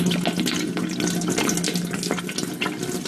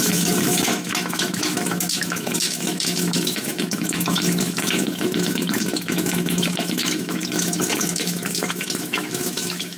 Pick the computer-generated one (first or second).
second